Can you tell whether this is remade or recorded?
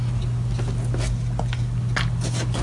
recorded